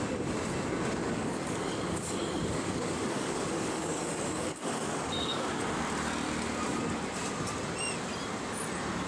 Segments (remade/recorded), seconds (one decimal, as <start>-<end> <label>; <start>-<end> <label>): 0.0-1.0 recorded; 1.0-5.6 remade; 5.6-9.1 recorded